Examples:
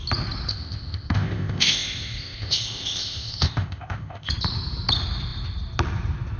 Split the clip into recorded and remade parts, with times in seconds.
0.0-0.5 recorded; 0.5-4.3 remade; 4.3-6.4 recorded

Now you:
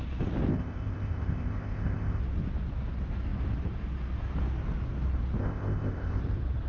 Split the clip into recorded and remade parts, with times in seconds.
0.0-0.5 recorded; 0.5-2.2 remade; 2.2-5.4 recorded; 5.4-6.2 remade; 6.2-6.7 recorded

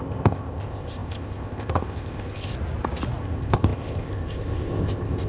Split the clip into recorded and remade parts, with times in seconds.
0.0-2.5 remade; 2.5-3.2 recorded; 3.2-5.3 remade

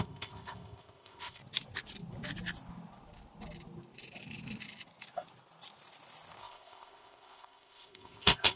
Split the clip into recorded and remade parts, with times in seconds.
0.0-1.4 remade; 1.4-6.4 recorded; 6.4-8.6 remade